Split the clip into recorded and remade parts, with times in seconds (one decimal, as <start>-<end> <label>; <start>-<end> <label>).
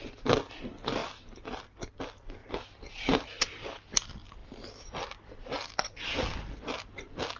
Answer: 0.0-7.4 recorded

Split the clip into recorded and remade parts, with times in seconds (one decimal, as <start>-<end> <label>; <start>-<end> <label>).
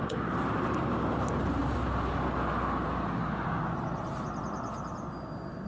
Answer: 0.0-5.7 recorded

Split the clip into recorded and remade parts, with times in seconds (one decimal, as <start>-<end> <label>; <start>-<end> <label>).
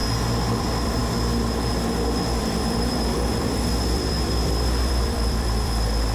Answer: 0.0-0.6 recorded; 0.6-1.0 remade; 1.0-2.4 recorded; 2.4-6.1 remade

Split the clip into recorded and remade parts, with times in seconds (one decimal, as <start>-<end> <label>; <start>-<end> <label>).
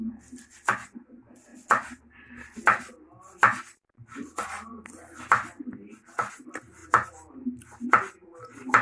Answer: 0.0-1.5 recorded; 1.5-2.3 remade; 2.3-4.7 recorded; 4.7-6.3 remade; 6.3-8.8 recorded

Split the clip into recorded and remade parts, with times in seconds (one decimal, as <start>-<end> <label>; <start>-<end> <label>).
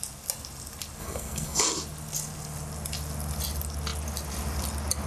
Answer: 0.0-1.0 recorded; 1.0-1.6 remade; 1.6-5.1 recorded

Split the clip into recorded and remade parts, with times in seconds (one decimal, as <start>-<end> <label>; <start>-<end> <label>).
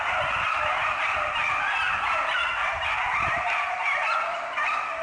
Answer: 0.0-5.0 recorded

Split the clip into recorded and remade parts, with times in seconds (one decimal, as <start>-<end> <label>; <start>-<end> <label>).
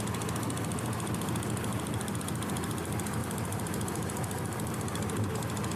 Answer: 0.0-1.7 recorded; 1.7-2.2 remade; 2.2-3.2 recorded; 3.2-5.3 remade; 5.3-5.8 recorded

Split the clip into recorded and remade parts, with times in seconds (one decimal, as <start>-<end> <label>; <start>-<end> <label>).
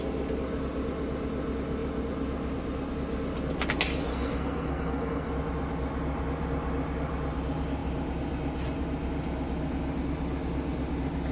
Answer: 0.0-4.1 recorded; 4.1-5.3 remade; 5.3-11.3 recorded